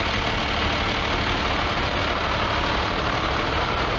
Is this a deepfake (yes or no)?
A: no